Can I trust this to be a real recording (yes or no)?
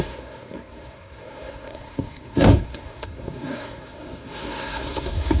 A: no